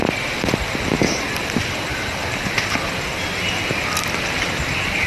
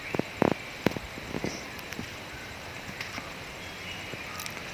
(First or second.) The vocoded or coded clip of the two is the first